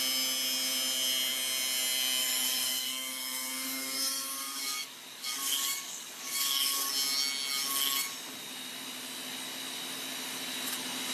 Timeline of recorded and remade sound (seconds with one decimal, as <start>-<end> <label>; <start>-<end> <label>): 0.0-2.2 recorded; 2.2-6.9 remade; 6.9-11.1 recorded